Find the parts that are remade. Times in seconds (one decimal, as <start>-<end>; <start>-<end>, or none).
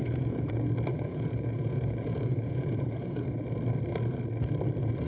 0.0-0.5; 0.9-3.2